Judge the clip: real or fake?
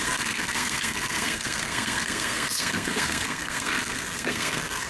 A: fake